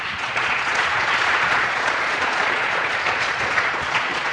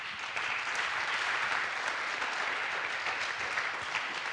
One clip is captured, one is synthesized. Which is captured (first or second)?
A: second